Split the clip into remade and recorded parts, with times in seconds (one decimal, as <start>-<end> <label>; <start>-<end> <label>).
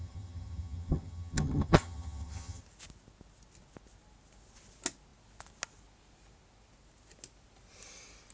0.0-2.6 remade; 2.6-8.3 recorded